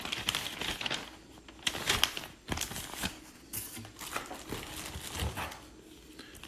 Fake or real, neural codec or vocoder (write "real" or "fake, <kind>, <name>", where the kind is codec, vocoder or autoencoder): real